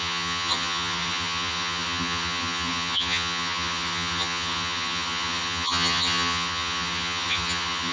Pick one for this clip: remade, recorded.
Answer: remade